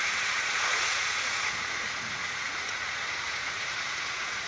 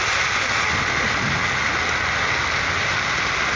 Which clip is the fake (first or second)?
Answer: first